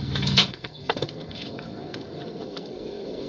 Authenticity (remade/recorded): remade